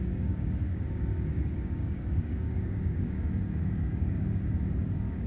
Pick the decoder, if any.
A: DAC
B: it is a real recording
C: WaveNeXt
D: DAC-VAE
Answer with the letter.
A